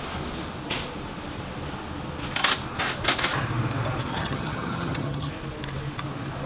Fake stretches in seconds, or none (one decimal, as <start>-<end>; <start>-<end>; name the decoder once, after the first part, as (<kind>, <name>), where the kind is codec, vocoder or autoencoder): 4.1-5.3 (vocoder, HiFi-GAN)